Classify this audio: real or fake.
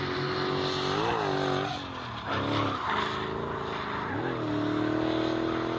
real